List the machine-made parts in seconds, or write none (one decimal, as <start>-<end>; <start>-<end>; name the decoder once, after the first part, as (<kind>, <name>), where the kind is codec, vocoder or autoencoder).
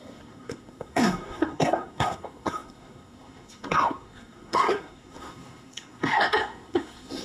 0.0-7.2 (codec, SNAC)